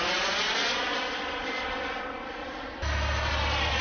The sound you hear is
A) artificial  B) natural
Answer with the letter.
B